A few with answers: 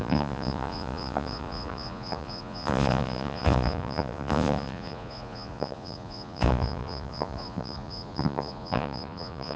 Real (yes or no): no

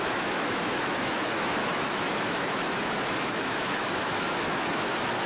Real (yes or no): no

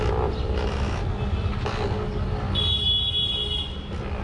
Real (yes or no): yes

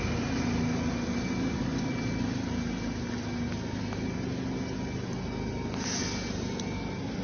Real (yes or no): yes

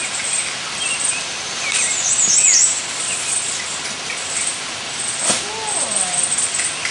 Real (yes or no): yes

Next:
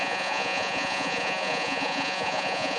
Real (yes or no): no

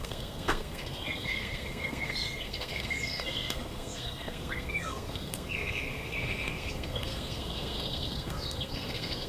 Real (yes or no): no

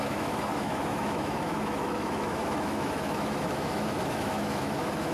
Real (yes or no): no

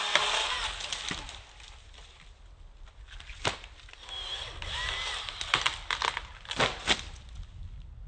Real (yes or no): yes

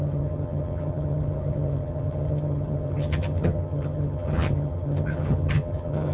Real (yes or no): no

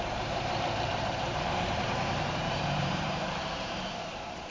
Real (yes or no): no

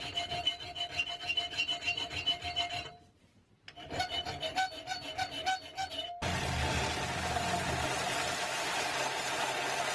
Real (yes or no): yes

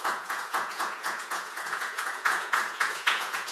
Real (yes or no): no